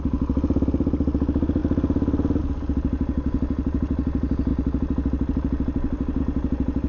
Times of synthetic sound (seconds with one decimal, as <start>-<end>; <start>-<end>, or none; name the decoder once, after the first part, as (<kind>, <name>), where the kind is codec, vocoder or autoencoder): none